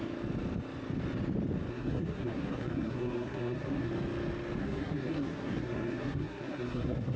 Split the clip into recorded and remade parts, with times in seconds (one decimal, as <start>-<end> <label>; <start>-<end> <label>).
0.0-1.7 recorded; 1.7-3.9 remade; 3.9-4.6 recorded; 4.6-7.2 remade